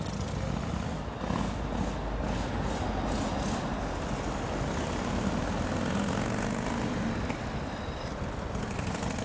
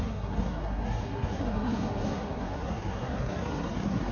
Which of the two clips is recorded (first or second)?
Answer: first